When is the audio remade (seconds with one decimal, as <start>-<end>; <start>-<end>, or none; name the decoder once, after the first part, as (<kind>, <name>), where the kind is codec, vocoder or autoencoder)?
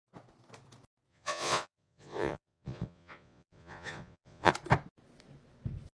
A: 1.1-4.5 (vocoder, Vocos)